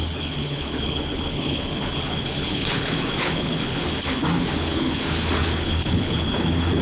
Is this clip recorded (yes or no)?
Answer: no